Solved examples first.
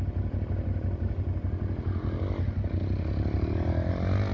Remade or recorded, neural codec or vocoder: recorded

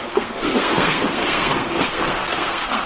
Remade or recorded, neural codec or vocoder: remade, codec, SNAC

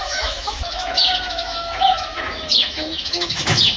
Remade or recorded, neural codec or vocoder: remade, autoencoder, DAC-VAE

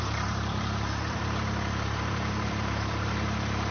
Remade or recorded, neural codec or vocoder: remade, vocoder, BigVGAN v2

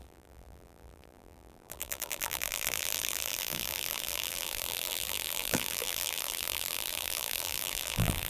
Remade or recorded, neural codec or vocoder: remade, vocoder, BigVGAN v2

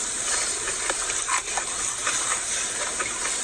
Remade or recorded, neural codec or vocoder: recorded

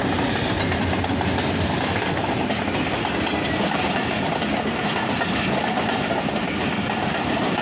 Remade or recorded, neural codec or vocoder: recorded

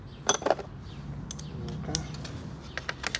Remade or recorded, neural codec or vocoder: recorded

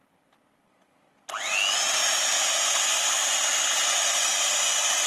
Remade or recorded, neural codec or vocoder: recorded